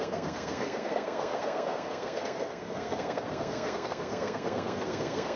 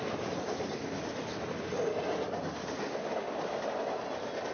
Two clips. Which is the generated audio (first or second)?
first